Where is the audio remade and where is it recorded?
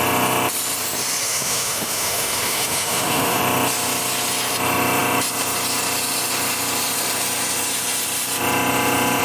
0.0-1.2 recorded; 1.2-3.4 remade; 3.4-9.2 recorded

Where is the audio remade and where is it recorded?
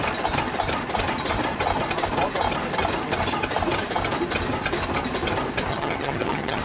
0.0-5.7 recorded; 5.7-6.6 remade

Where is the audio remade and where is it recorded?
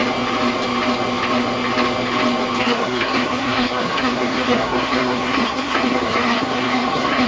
0.0-2.6 recorded; 2.6-7.3 remade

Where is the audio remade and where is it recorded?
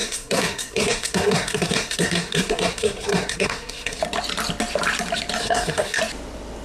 0.0-4.0 remade; 4.0-5.4 recorded; 5.4-6.0 remade; 6.0-6.6 recorded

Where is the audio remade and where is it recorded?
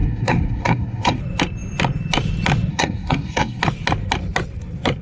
0.0-1.2 remade; 1.2-2.7 recorded; 2.7-3.6 remade; 3.6-5.0 recorded